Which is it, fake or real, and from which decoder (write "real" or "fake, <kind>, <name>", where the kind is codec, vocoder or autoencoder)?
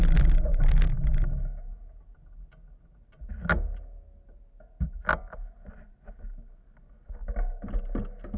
real